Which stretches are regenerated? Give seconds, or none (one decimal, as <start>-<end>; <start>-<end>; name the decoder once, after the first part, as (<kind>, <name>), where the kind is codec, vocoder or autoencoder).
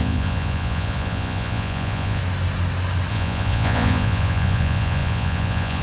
0.0-2.2 (vocoder, Vocos); 3.1-5.8